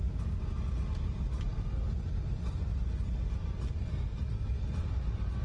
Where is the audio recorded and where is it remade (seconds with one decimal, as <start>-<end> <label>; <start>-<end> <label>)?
0.0-5.4 recorded